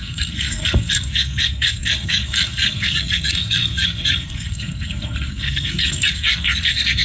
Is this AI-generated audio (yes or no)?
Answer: yes